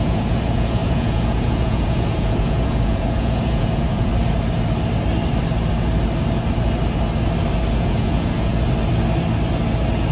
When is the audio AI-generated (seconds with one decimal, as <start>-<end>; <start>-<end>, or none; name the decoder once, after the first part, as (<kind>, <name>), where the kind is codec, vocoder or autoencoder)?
0.0-4.1 (vocoder, Vocos); 7.7-8.5